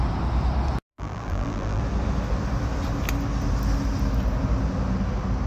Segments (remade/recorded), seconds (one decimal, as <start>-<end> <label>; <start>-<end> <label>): 0.0-0.9 recorded; 0.9-1.8 remade; 1.8-5.5 recorded